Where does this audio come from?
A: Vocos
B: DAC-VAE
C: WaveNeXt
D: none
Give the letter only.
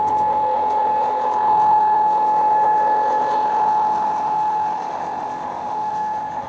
B